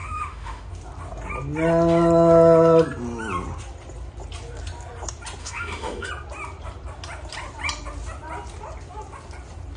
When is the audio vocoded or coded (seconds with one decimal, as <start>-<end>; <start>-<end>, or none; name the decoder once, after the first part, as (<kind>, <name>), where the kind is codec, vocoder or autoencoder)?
0.0-0.7 (autoencoder, DAC-VAE); 5.4-6.1